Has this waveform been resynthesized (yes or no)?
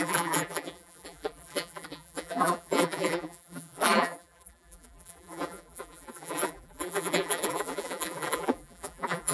yes